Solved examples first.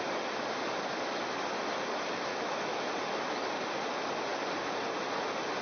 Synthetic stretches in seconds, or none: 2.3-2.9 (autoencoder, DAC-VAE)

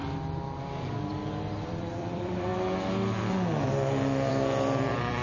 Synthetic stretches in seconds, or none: 1.6-2.5 (vocoder, BigVGAN v2); 4.3-5.2

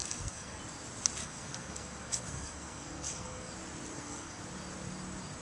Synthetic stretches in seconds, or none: 0.0-0.6 (codec, SNAC); 1.2-3.5; 3.9-4.4

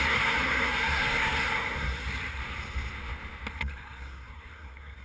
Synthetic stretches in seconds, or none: 0.0-2.4 (codec, SNAC); 3.5-5.0

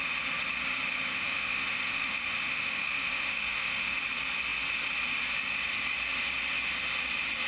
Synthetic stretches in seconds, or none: 1.1-4.0 (autoencoder, DAC-VAE)

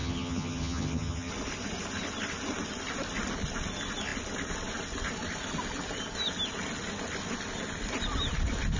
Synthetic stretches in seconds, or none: 0.0-1.3 (vocoder, HiFi-GAN)

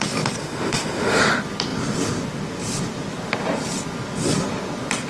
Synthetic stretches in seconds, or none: 0.4-1.2 (autoencoder, DAC-VAE)

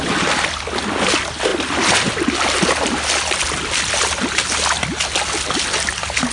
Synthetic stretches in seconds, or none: none